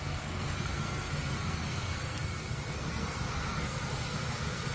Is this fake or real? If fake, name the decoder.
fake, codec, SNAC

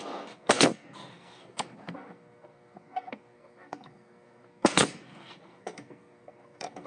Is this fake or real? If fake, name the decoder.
fake, codec, SNAC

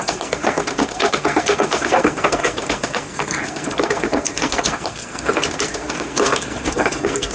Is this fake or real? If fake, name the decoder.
fake, codec, SNAC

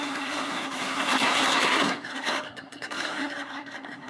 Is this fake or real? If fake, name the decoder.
fake, codec, SNAC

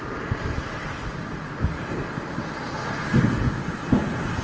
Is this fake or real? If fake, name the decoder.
real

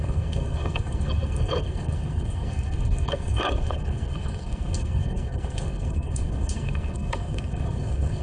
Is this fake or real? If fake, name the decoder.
fake, codec, SNAC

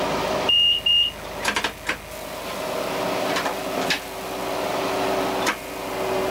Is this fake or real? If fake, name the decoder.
real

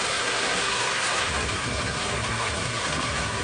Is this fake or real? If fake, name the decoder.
fake, codec, SNAC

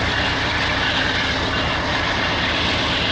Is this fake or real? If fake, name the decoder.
real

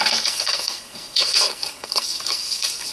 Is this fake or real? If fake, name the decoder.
fake, codec, SNAC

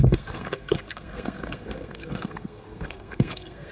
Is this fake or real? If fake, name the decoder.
fake, codec, SNAC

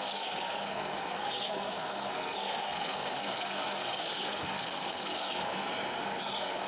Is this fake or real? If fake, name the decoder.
fake, codec, SNAC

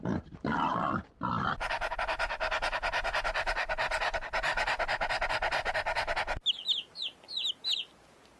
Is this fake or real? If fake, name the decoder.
real